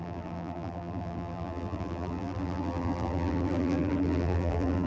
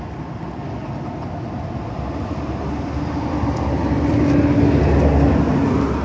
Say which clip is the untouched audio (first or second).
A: second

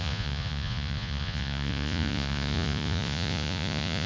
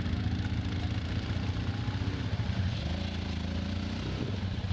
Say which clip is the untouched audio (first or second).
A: second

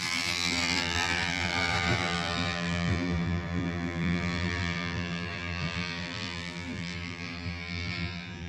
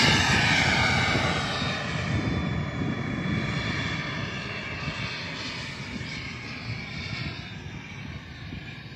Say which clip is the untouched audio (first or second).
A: second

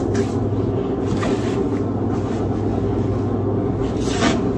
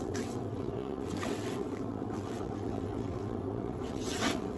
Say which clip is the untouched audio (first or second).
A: first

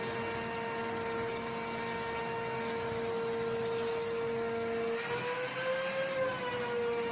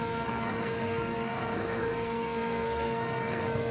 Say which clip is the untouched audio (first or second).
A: first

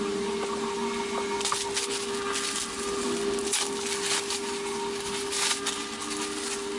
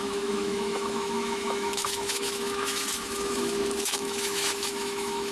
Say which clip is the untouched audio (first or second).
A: first